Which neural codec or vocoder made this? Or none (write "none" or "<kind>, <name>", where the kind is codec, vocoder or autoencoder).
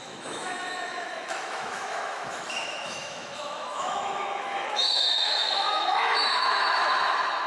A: autoencoder, DAC-VAE